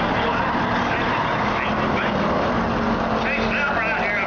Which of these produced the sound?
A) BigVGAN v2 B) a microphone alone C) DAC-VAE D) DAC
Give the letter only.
B